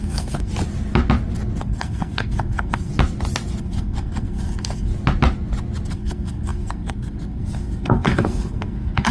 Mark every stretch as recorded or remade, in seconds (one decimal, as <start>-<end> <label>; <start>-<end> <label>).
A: 0.0-0.5 remade; 0.5-1.6 recorded; 1.6-2.9 remade; 2.9-3.6 recorded; 3.6-4.9 remade; 4.9-5.9 recorded; 5.9-9.1 remade